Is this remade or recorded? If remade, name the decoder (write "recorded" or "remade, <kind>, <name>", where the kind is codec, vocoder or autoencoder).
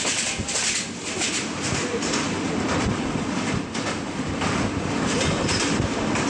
remade, vocoder, BigVGAN v2